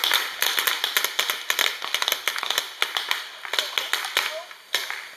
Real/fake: real